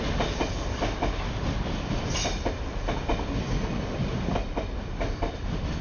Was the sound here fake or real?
real